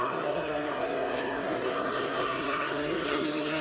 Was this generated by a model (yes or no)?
yes